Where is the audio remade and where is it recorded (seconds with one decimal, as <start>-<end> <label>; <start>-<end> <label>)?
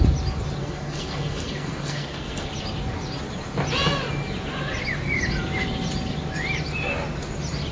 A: 0.0-0.6 recorded; 0.6-2.5 remade; 2.5-7.7 recorded